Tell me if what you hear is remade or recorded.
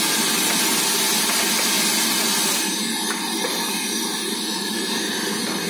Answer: recorded